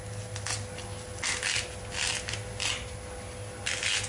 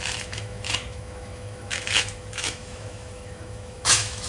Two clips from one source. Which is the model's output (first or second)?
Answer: second